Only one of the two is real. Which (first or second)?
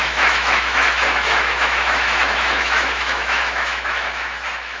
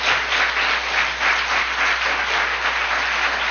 second